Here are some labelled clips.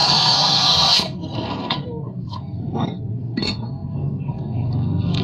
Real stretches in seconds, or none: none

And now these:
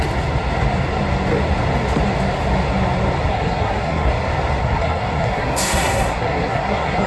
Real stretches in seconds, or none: 0.0-3.3; 4.1-4.6